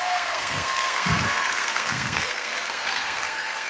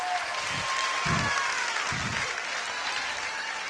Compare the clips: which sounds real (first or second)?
second